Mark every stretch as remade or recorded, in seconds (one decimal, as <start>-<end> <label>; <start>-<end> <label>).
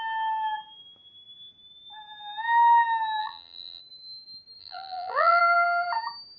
0.0-3.2 recorded; 3.2-3.8 remade; 3.8-4.6 recorded; 4.6-5.4 remade; 5.4-6.4 recorded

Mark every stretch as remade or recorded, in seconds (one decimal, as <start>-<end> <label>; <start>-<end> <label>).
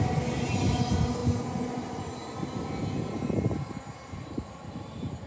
0.0-5.3 recorded